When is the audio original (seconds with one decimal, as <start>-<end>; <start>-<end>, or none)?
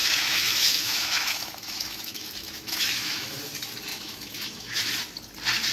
3.4-3.9; 4.9-5.7